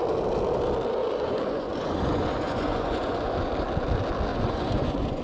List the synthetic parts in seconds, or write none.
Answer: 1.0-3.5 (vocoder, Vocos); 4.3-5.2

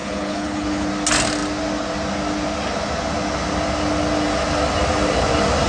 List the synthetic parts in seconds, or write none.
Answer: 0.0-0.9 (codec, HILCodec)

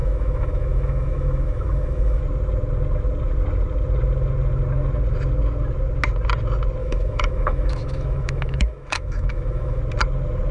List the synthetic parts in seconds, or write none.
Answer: 0.0-2.2 (autoencoder, DAC-VAE); 6.8-9.8

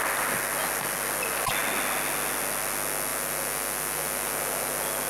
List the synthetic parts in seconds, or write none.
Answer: none

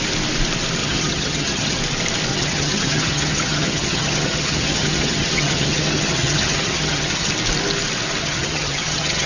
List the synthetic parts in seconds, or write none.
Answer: 0.8-1.8 (vocoder, HiFi-GAN); 2.3-7.3; 8.2-9.3